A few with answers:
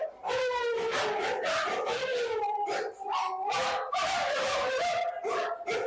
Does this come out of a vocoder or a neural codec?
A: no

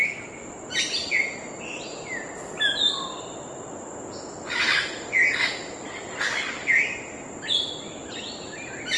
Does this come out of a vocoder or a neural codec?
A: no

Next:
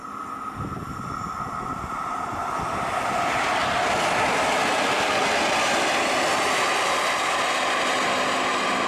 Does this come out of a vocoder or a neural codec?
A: no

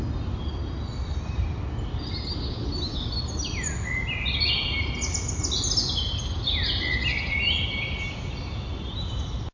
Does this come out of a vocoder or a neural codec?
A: no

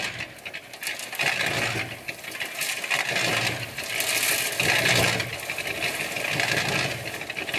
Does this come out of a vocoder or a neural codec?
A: no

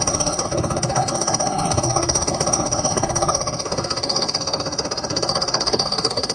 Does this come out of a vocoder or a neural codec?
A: yes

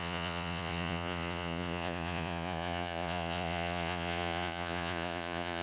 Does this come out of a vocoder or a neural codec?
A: yes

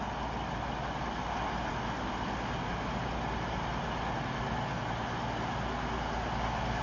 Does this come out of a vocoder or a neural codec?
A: no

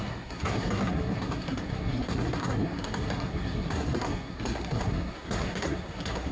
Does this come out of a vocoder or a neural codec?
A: yes